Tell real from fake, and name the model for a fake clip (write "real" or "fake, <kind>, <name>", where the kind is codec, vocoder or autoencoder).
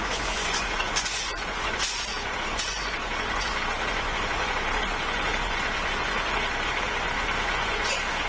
fake, vocoder, Vocos